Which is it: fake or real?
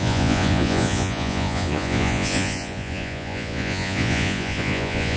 fake